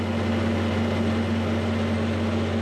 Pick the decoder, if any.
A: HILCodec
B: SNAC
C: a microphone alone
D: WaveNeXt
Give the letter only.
C